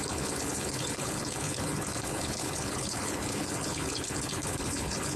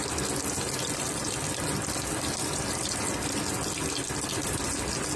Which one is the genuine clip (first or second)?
second